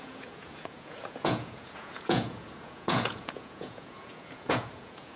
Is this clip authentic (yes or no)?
no